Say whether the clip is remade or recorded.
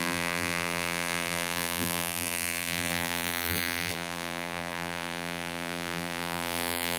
remade